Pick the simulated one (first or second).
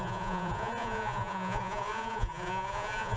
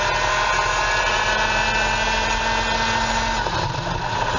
first